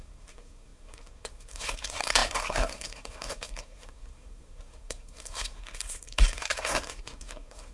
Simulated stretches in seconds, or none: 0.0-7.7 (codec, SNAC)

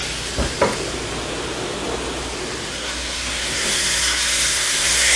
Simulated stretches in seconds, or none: 2.7-5.2 (codec, SNAC)